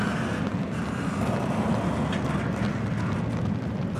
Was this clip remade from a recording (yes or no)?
no